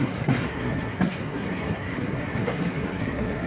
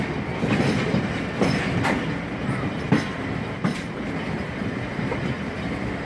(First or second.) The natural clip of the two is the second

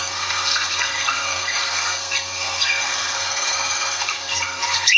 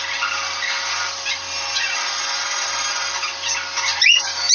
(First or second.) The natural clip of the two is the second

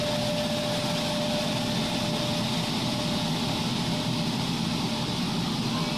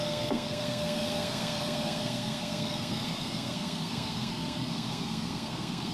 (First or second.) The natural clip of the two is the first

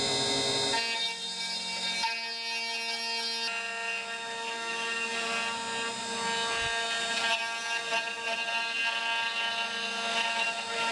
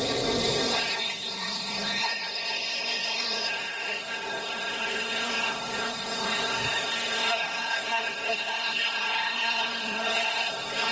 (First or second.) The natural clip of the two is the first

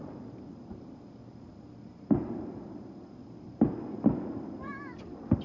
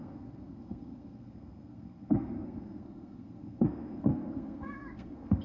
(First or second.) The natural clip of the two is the first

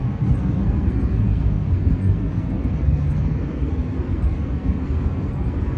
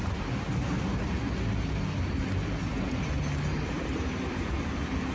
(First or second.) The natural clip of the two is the second